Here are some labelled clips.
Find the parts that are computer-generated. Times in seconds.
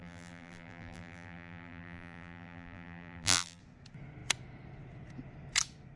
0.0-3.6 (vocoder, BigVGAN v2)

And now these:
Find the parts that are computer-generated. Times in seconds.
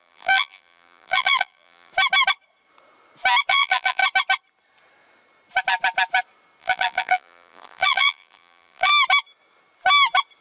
0.0-1.9 (vocoder, BigVGAN v2); 3.5-4.0; 6.6-8.9